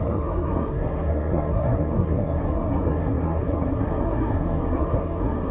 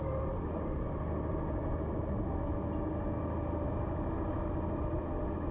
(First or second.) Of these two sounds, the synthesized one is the first